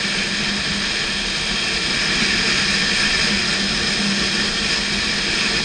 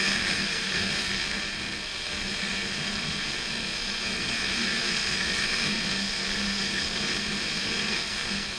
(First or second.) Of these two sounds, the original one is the first